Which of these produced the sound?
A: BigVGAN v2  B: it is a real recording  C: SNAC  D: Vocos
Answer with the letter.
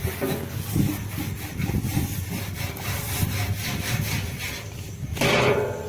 B